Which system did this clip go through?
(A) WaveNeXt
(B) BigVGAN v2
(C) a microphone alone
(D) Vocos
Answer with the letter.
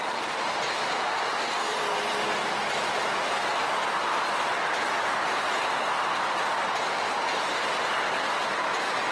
C